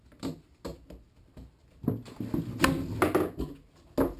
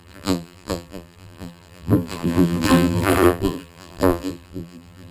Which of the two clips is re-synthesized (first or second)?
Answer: second